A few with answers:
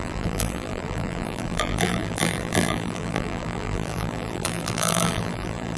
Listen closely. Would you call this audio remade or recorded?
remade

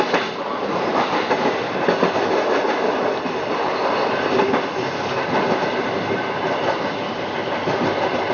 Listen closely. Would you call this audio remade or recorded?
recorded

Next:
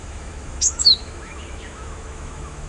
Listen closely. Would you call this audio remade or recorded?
remade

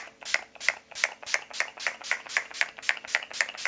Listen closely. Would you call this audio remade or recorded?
recorded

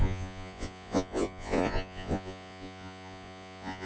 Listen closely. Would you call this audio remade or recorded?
remade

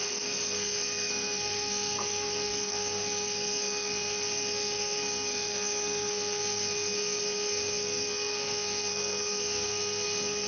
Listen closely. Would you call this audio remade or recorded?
remade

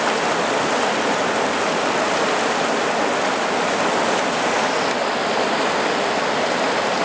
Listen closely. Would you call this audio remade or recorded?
recorded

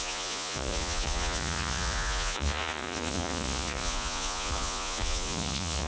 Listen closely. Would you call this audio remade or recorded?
remade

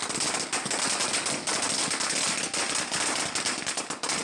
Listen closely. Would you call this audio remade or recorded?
recorded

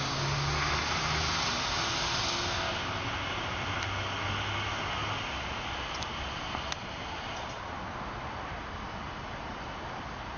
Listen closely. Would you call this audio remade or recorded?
recorded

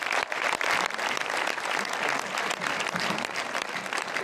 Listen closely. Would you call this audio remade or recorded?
remade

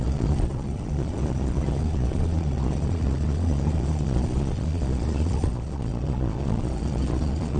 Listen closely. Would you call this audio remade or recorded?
remade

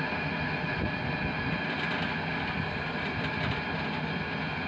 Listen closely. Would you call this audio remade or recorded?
recorded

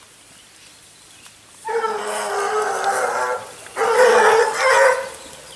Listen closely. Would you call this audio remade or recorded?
recorded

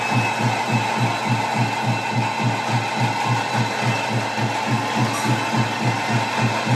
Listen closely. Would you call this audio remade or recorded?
recorded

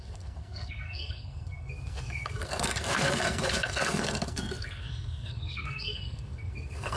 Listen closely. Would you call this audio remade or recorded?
remade